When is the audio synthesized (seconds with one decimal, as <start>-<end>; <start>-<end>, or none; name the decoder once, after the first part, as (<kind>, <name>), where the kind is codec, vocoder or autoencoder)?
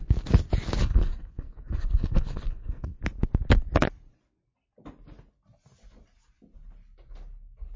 0.8-3.0 (codec, SNAC)